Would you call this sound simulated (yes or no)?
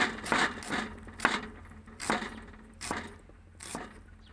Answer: no